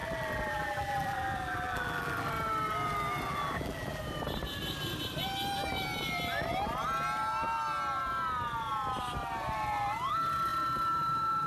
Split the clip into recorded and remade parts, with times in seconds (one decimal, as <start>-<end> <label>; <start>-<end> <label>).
0.0-2.3 remade; 2.3-3.3 recorded; 3.3-4.0 remade; 4.0-11.5 recorded